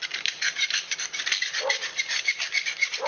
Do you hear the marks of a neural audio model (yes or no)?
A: no